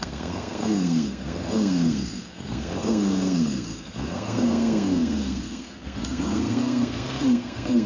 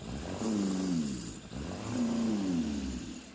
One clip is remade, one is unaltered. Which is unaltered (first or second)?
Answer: second